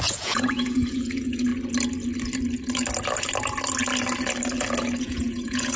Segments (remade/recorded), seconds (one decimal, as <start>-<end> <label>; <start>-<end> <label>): 0.0-1.5 remade; 1.5-5.0 recorded; 5.0-5.8 remade

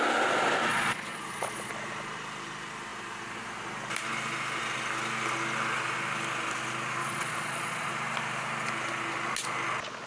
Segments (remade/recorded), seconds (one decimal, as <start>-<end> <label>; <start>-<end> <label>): 0.0-0.7 recorded; 0.7-1.7 remade; 1.7-7.0 recorded; 7.0-7.9 remade; 7.9-10.1 recorded

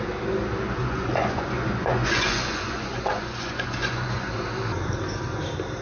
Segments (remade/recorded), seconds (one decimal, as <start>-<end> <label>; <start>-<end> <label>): 0.0-0.8 recorded; 0.8-4.3 remade; 4.3-5.8 recorded

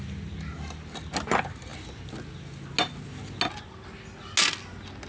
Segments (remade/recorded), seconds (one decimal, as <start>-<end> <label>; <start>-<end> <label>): 0.0-5.1 recorded

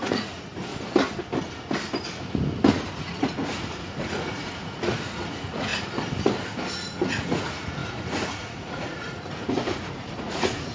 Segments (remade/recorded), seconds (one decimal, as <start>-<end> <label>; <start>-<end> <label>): 0.0-0.7 remade; 0.7-2.7 recorded; 2.7-5.7 remade; 5.7-6.7 recorded; 6.7-10.7 remade